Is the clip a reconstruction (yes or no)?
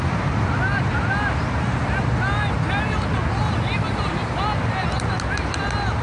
no